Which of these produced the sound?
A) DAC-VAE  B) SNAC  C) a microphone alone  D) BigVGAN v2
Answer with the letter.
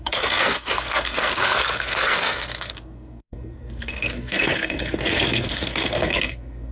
B